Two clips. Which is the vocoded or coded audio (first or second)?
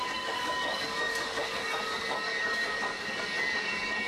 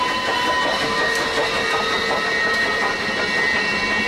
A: first